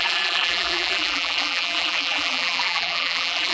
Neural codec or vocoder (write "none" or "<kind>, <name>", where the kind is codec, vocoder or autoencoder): vocoder, BigVGAN v2